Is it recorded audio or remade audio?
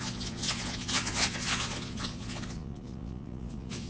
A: remade